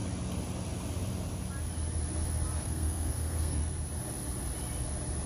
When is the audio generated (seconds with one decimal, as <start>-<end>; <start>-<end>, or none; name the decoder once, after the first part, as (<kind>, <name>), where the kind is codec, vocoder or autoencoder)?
2.6-3.6 (codec, SNAC)

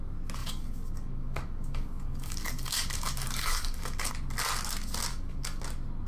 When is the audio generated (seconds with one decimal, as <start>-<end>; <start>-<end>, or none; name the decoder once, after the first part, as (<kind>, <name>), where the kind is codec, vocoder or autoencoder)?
0.4-4.1 (codec, DAC); 5.1-5.6

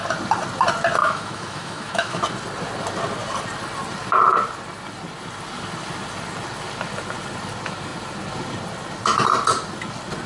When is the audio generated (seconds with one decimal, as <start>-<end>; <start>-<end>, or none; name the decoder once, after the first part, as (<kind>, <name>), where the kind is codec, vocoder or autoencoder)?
1.0-2.2 (autoencoder, DAC-VAE)

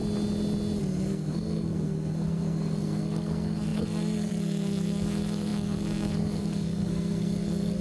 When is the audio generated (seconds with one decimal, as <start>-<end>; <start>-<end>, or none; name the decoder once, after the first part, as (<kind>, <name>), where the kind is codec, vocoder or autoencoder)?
0.8-7.8 (codec, SNAC)

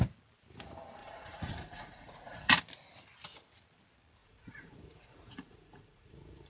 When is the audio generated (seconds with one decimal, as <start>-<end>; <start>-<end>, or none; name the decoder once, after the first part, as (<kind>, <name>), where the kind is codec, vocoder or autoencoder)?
1.0-2.6 (vocoder, Vocos); 4.2-6.5